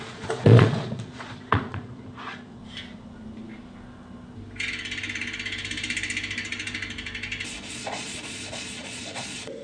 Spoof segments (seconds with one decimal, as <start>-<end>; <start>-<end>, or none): 0.0-2.6; 7.7-9.6